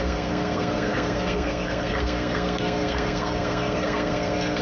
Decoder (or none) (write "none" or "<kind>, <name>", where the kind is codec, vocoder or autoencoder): codec, SNAC